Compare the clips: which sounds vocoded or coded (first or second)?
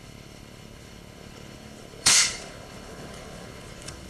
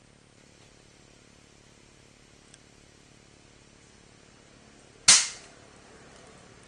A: first